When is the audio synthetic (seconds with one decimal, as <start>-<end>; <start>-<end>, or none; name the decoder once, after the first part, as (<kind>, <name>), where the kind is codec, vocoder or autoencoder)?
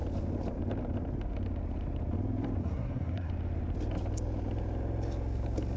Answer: 2.6-3.3 (codec, SNAC)